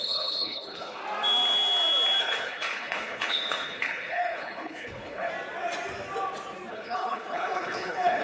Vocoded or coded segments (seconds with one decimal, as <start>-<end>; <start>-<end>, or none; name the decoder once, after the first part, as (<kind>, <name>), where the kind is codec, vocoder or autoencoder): 0.0-1.0 (codec, HILCodec); 2.2-5.3; 6.7-8.2